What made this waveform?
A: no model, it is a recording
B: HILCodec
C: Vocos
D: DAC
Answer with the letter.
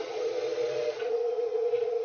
C